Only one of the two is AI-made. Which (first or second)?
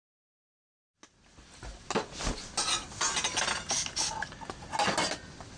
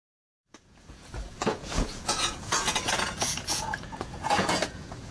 second